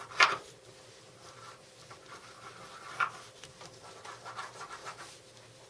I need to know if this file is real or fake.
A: real